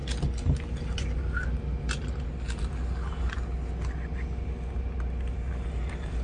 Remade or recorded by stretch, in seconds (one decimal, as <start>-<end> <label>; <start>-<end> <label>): 0.0-6.2 recorded